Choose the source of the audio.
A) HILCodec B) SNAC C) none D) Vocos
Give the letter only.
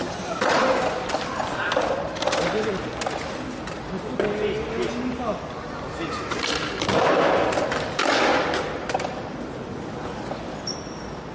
C